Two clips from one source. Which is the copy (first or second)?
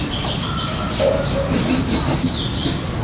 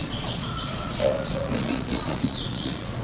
second